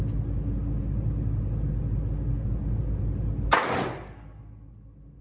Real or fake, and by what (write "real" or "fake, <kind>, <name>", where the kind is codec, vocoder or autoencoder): real